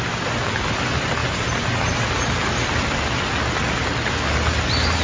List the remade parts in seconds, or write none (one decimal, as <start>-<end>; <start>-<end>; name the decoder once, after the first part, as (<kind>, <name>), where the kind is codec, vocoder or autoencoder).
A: none